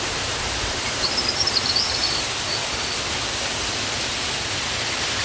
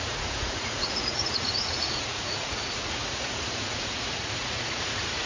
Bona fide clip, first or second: first